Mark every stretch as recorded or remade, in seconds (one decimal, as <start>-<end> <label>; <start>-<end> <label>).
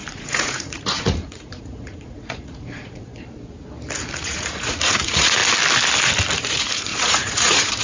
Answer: 0.0-3.1 remade; 3.1-4.0 recorded; 4.0-5.4 remade; 5.4-6.4 recorded; 6.4-7.8 remade